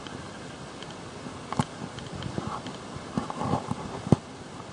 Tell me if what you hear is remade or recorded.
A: recorded